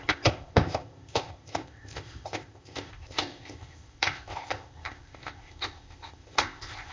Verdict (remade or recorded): remade